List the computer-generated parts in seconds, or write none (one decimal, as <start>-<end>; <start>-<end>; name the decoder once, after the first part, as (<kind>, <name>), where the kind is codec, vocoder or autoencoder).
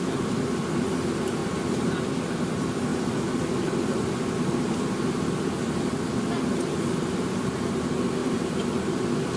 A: none